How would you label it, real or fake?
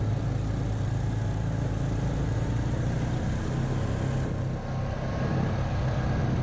real